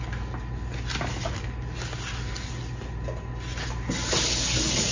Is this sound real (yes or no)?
yes